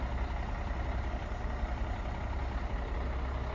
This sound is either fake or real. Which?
real